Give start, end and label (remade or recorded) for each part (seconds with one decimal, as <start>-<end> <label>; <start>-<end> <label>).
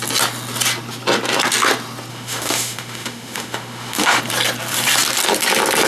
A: 0.0-2.1 recorded; 2.1-4.2 remade; 4.2-5.9 recorded